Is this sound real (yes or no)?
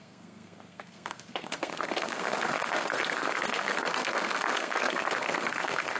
no